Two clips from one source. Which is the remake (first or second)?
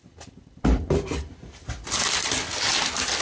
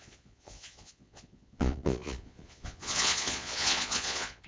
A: second